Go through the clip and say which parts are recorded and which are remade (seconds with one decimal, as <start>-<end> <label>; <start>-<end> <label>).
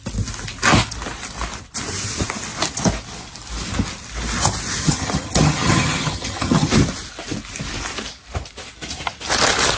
0.0-4.8 recorded; 4.8-6.7 remade; 6.7-9.8 recorded